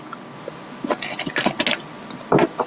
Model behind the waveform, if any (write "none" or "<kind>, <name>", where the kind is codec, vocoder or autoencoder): none